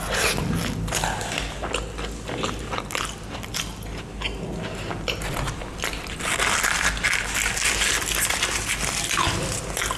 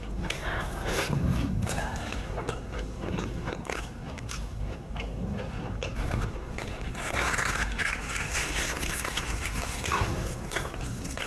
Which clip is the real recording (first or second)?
first